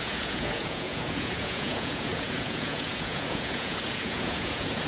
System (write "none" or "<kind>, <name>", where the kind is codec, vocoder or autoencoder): vocoder, Vocos